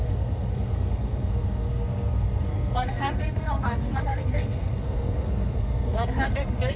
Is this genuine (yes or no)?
no